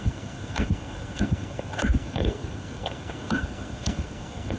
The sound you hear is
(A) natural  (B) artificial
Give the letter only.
B